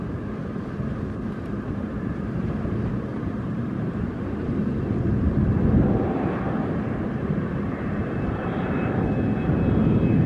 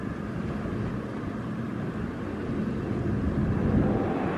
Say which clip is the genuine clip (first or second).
second